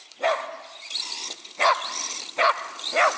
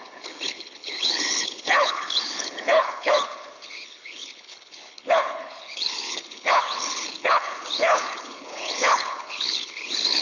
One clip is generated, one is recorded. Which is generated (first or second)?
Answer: second